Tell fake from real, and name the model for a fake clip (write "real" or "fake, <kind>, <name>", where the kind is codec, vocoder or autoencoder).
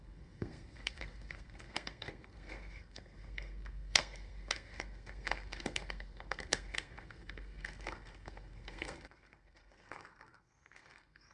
fake, codec, SNAC